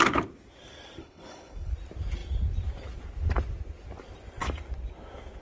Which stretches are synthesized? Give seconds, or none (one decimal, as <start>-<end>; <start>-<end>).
1.0-1.7